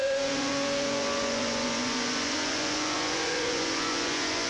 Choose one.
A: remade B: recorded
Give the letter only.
A